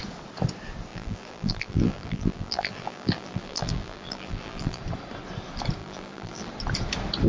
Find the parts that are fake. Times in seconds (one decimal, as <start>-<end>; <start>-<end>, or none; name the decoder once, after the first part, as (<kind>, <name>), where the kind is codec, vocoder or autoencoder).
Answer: 0.9-4.8 (vocoder, BigVGAN v2); 5.8-6.5